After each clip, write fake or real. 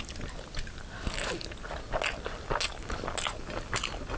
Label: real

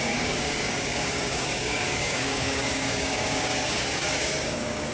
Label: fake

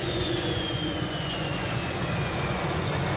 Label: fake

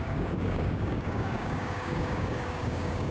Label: fake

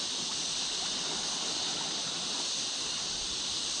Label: real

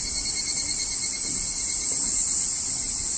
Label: real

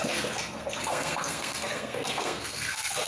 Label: fake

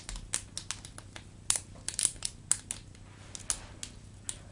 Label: real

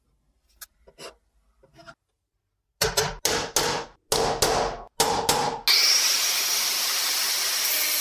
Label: real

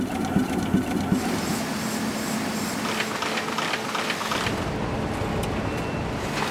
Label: real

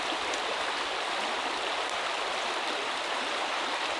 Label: real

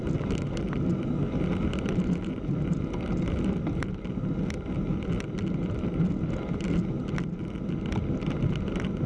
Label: real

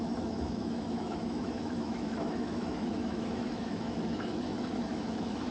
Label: fake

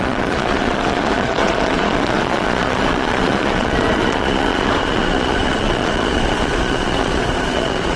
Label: fake